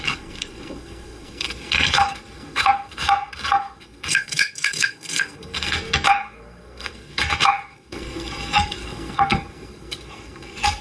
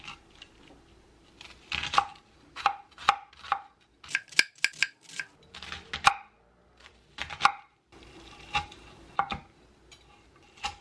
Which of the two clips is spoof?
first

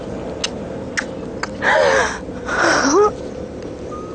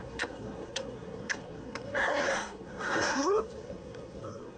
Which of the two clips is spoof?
second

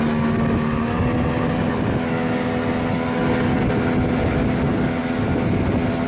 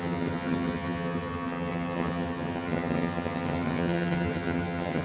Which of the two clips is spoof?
second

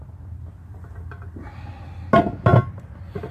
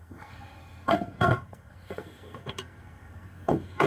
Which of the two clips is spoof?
second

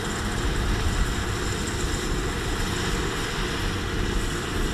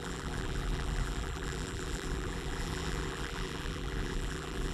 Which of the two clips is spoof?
second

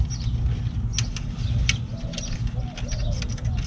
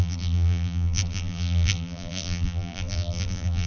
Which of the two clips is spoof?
second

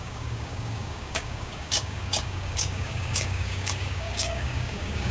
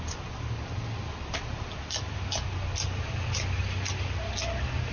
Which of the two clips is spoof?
first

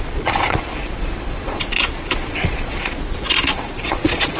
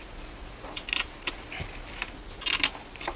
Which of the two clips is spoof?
first